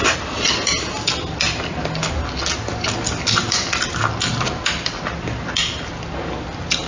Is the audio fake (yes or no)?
no